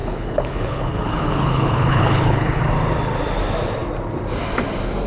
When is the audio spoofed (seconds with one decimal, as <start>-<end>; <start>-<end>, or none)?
0.0-2.6